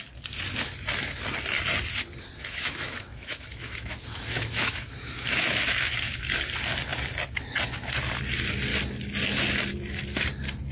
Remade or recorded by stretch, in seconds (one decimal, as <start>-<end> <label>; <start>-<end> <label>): 0.0-2.4 recorded; 2.4-6.2 remade; 6.2-10.7 recorded